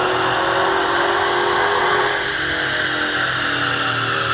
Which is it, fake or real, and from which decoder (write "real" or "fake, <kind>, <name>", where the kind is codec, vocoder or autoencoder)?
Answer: real